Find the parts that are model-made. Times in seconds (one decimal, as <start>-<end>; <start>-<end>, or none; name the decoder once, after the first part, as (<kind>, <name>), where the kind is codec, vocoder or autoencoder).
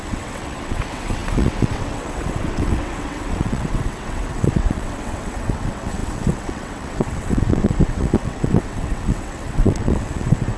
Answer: 0.0-10.6 (vocoder, WaveNeXt)